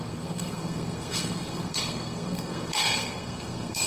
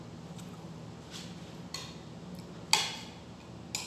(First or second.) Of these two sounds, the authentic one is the second